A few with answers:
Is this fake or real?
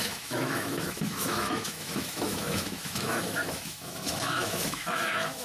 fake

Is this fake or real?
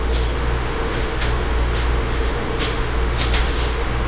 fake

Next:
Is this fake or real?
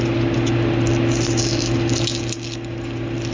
real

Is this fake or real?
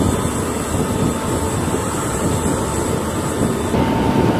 real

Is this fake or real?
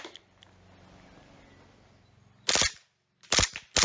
real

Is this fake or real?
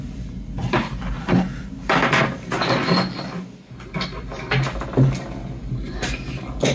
real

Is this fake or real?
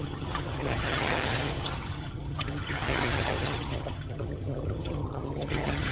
fake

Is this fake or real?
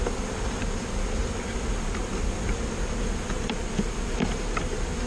real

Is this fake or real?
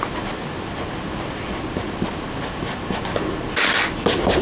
real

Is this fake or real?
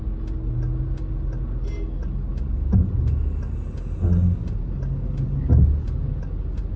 real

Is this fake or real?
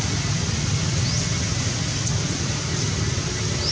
real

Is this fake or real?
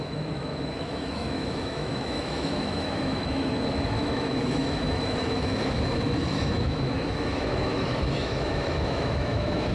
fake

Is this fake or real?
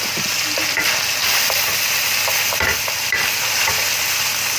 real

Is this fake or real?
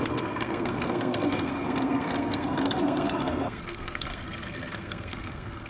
fake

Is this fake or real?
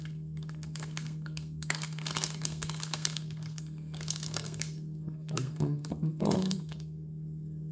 fake